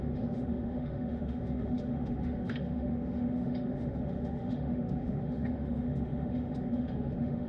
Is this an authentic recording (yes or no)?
no